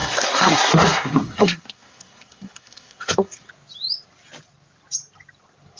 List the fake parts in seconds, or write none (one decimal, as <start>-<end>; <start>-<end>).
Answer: 0.0-3.5